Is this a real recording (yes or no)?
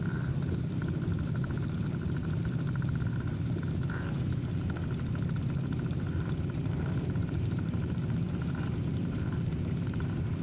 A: no